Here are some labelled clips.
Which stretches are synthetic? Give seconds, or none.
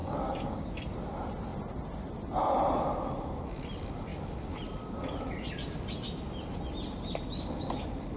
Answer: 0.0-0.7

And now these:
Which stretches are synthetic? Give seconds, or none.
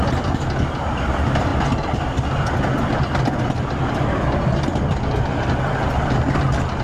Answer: none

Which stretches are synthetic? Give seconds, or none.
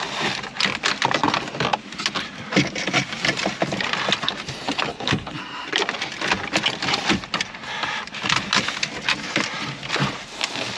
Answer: 4.9-5.4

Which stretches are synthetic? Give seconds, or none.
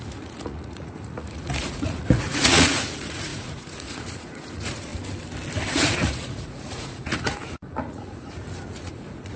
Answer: 0.0-4.9; 5.7-9.4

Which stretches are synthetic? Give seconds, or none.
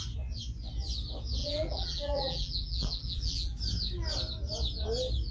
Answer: 1.4-3.6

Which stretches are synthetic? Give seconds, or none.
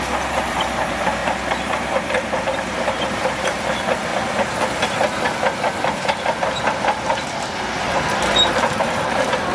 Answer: 0.0-4.1; 6.4-9.5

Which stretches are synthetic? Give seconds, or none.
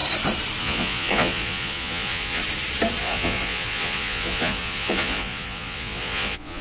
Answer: 0.6-2.4; 3.0-6.6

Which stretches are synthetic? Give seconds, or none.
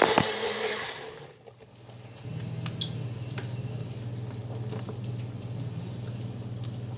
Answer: none